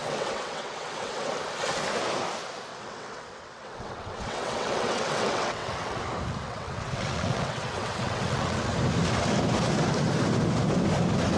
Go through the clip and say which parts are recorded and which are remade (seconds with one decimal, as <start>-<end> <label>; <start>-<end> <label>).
0.0-1.3 remade; 1.3-2.7 recorded; 2.7-6.0 remade; 6.0-6.5 recorded; 6.5-8.7 remade; 8.7-11.4 recorded